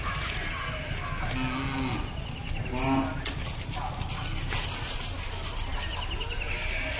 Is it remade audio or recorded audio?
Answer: recorded